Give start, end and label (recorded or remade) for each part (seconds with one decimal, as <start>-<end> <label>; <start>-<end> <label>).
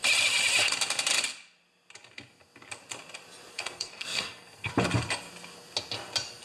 0.0-3.5 recorded; 3.5-4.7 remade; 4.7-6.4 recorded